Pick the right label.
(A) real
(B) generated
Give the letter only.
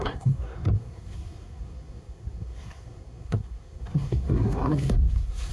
B